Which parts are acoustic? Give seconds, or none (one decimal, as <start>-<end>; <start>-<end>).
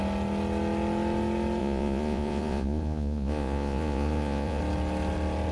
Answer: 0.0-1.6; 4.6-5.5